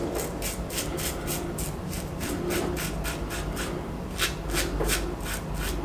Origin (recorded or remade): recorded